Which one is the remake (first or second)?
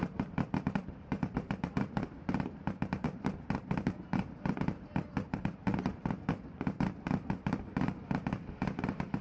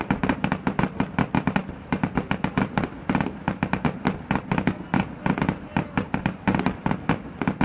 first